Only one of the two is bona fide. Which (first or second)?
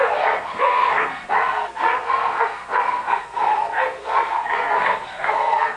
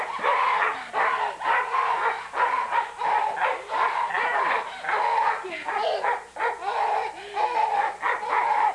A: second